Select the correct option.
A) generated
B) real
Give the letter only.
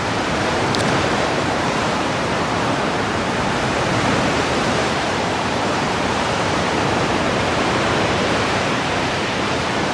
A